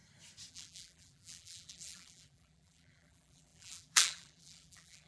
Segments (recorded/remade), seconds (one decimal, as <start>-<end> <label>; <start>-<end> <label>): 0.0-0.5 recorded; 0.5-5.1 remade